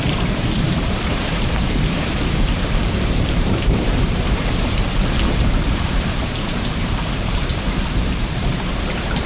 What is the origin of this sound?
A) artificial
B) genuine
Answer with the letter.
A